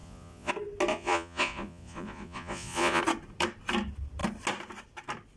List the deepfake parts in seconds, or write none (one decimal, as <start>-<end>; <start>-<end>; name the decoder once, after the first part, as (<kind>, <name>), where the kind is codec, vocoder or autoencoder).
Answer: 0.0-0.5 (vocoder, Vocos); 0.9-3.0